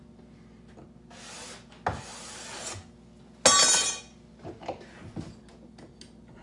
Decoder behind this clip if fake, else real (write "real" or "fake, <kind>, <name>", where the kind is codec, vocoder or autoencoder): real